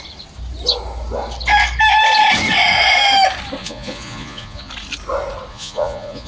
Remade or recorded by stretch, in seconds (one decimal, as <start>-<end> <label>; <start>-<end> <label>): 0.0-3.6 recorded; 3.6-4.7 remade; 4.7-5.5 recorded; 5.5-6.3 remade